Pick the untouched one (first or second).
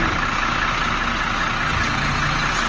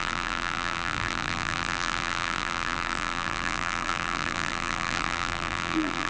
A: first